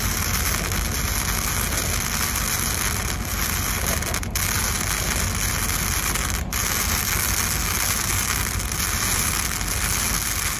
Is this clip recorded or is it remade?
recorded